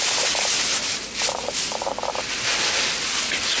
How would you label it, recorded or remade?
recorded